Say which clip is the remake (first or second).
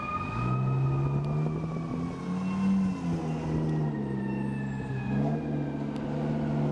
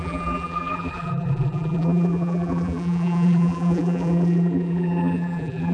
second